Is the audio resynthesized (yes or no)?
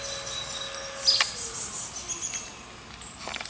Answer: no